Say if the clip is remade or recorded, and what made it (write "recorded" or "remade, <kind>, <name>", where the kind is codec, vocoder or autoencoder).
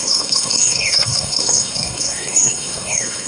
remade, codec, SNAC